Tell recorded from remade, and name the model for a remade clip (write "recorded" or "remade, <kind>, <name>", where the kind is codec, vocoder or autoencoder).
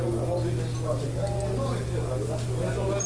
recorded